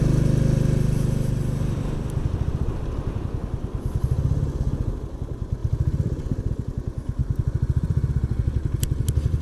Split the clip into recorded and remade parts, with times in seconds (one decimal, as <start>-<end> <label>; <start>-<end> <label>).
0.0-2.3 recorded; 2.3-3.4 remade; 3.4-5.6 recorded; 5.6-6.5 remade; 6.5-7.2 recorded; 7.2-8.1 remade; 8.1-9.4 recorded